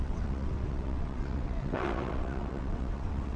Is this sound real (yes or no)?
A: no